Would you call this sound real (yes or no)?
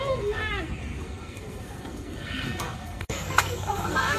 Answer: no